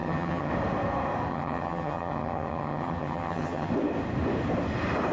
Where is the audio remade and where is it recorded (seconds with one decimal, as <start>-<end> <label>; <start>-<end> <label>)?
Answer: 0.0-0.5 remade; 0.5-1.3 recorded; 1.3-3.7 remade; 3.7-5.1 recorded